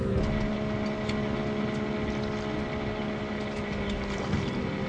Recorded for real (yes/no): yes